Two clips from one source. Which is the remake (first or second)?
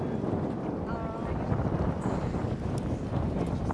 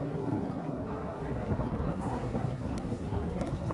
second